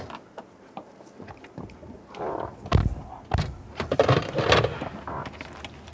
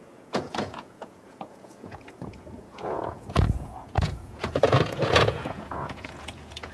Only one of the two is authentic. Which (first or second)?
first